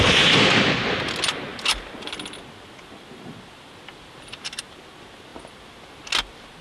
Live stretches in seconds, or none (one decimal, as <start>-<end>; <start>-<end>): 0.0-6.6